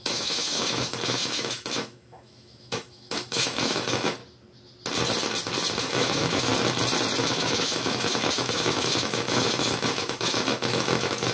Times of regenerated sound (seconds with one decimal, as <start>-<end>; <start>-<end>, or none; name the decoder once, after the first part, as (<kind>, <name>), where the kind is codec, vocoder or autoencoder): 0.0-4.2 (autoencoder, DAC-VAE); 5.8-6.5; 7.2-11.3